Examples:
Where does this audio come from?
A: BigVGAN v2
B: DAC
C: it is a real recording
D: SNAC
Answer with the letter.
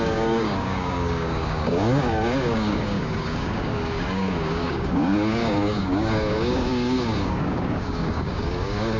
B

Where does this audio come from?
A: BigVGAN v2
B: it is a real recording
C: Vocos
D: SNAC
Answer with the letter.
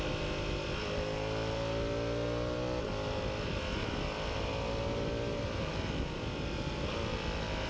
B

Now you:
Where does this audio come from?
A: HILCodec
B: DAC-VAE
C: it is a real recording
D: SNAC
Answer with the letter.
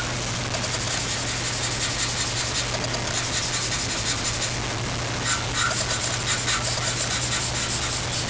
C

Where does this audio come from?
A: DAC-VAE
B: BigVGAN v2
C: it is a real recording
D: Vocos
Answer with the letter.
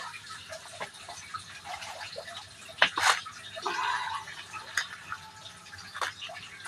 C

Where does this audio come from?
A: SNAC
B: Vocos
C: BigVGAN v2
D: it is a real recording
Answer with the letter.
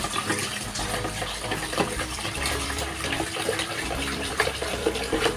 C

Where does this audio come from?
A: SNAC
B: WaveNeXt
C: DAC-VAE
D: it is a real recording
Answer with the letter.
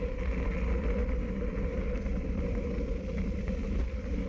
D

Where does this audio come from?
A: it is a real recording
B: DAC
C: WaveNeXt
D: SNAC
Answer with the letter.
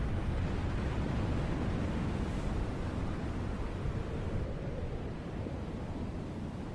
A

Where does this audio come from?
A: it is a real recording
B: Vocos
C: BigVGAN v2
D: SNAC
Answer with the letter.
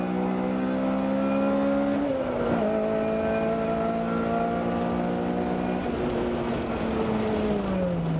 A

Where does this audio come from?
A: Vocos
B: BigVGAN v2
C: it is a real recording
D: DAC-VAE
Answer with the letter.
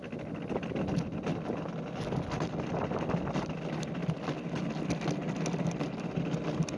C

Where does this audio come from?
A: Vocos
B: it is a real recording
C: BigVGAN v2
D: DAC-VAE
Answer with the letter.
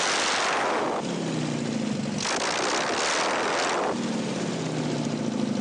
B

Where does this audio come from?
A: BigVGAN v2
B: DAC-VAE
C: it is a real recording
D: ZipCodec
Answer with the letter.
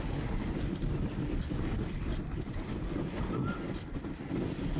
C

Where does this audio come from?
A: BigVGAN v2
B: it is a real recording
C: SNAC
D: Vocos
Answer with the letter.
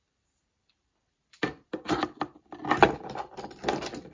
A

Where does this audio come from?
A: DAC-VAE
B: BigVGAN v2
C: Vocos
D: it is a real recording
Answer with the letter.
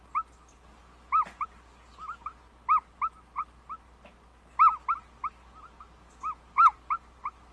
D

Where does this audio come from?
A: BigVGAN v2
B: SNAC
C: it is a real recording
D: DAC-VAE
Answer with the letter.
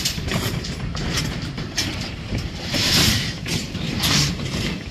A